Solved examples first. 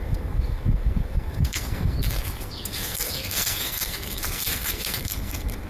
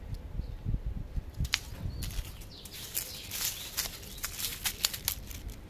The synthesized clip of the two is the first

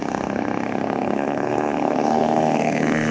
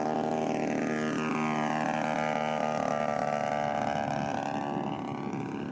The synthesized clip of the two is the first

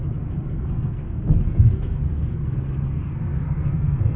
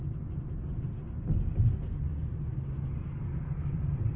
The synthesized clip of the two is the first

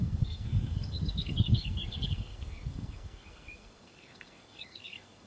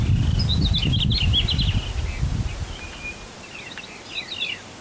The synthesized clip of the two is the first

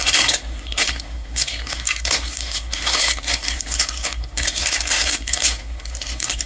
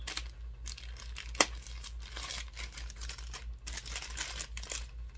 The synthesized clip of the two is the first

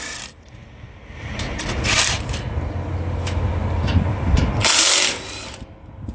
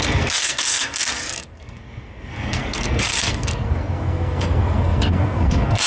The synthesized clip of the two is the second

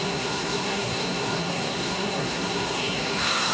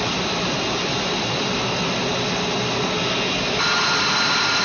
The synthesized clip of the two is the first